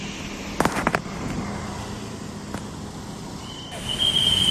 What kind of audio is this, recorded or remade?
recorded